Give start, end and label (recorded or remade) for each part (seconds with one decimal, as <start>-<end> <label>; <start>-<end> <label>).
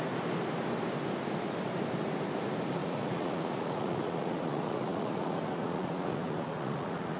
0.0-2.8 recorded; 2.8-7.2 remade